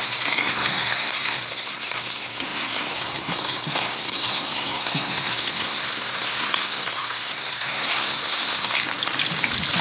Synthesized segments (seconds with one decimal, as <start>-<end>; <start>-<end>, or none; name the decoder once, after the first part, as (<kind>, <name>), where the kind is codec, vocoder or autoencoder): 0.0-8.8 (codec, SNAC)